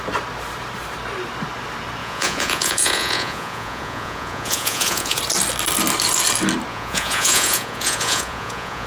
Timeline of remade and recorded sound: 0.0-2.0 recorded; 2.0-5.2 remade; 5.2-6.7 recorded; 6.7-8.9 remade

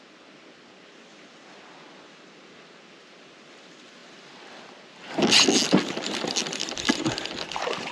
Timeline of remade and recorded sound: 0.0-7.9 recorded

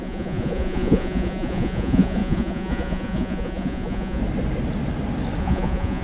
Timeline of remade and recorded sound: 0.0-4.2 remade; 4.2-5.4 recorded; 5.4-6.0 remade

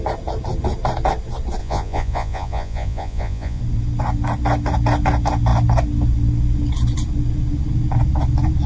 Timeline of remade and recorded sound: 0.0-1.6 recorded; 1.6-3.6 remade; 3.6-8.7 recorded

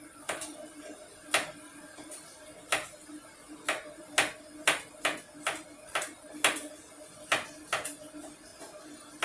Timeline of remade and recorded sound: 0.0-9.2 recorded

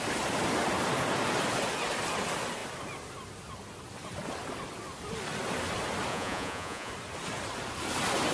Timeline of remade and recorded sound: 0.0-6.1 recorded; 6.1-6.9 remade; 6.9-8.3 recorded